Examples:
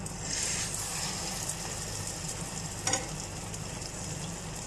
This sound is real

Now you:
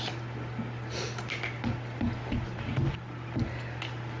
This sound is real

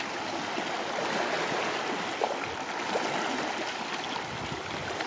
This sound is real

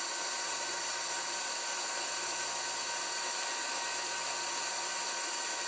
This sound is real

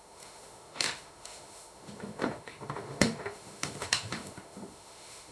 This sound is fake